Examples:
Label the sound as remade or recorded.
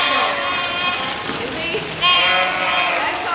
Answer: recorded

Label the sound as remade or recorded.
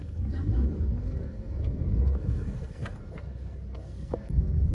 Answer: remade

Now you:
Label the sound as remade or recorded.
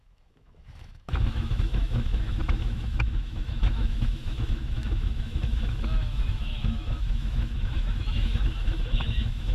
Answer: remade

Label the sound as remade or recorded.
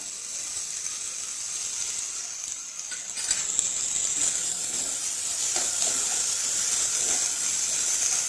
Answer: recorded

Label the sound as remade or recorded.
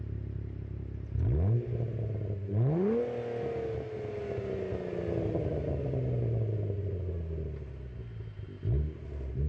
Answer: recorded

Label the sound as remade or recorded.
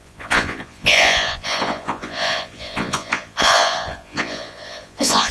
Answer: remade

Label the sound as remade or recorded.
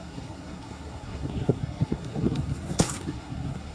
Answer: remade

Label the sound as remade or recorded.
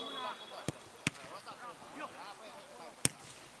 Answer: recorded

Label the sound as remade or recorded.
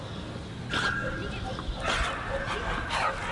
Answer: recorded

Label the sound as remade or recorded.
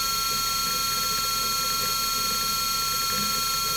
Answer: recorded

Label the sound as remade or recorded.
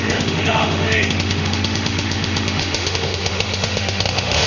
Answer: remade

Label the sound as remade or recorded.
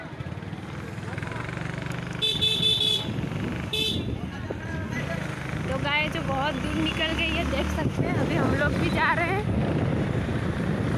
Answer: recorded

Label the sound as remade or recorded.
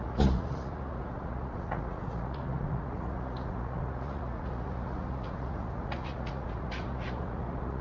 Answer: remade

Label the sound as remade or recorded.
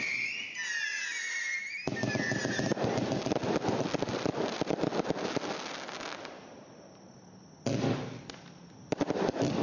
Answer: recorded